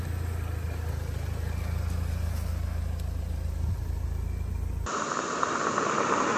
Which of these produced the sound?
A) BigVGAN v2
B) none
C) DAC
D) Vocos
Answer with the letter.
B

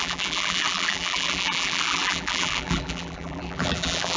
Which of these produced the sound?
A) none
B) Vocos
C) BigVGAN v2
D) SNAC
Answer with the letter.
C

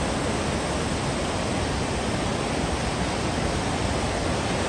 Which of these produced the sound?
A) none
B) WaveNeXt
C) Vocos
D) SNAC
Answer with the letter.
A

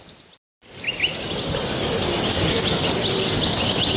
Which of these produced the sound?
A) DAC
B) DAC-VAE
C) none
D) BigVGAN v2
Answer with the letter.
C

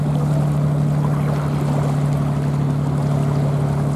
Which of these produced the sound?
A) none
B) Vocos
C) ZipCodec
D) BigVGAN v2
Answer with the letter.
A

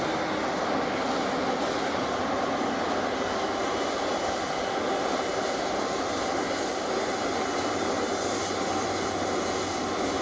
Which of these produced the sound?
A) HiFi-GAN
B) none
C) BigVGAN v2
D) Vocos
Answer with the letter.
B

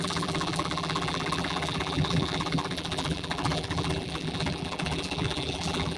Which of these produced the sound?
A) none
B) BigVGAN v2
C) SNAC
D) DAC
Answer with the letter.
B